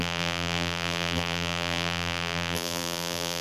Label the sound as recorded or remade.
remade